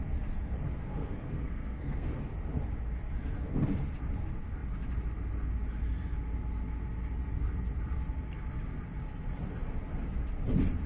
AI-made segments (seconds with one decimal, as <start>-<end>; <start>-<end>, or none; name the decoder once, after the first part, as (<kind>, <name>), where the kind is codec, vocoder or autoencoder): 0.9-2.1 (codec, SNAC)